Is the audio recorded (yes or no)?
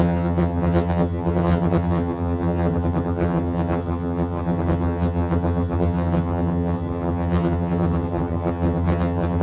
no